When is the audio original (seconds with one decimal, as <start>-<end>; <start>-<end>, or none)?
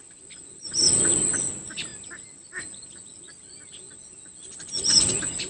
0.0-5.5